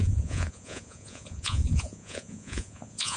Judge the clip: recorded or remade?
remade